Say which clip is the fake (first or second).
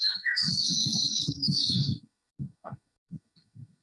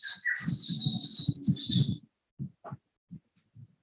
first